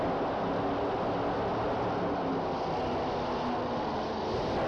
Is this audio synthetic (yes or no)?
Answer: no